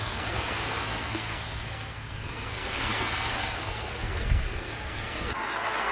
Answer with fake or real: fake